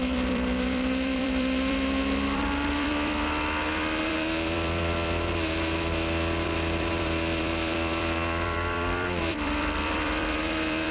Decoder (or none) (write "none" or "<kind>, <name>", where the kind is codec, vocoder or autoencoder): vocoder, BigVGAN v2